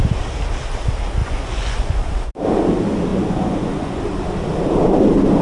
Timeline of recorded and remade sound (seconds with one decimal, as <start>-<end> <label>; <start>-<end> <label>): 0.0-1.2 recorded; 1.2-2.3 remade; 2.3-3.1 recorded; 3.1-4.0 remade; 4.0-5.4 recorded